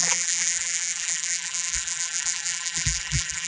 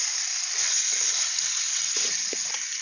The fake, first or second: first